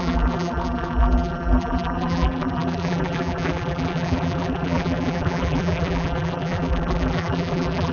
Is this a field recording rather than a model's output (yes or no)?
no